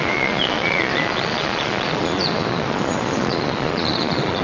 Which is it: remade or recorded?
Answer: remade